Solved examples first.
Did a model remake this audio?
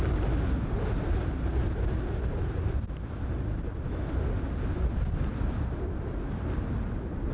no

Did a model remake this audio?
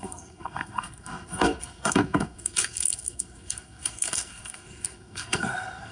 yes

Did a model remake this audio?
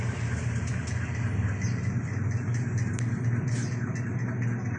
no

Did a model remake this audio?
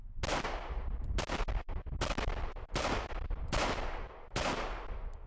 no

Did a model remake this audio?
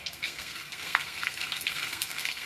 yes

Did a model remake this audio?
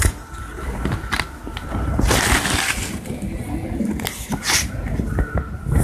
no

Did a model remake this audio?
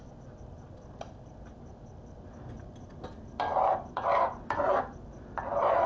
no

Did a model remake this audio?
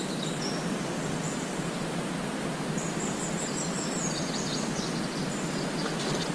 no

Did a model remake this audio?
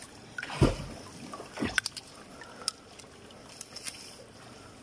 no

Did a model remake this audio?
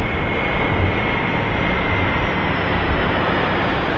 no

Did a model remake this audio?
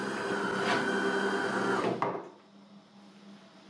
no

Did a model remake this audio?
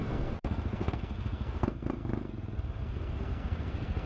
yes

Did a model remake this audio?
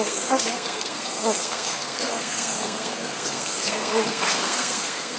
yes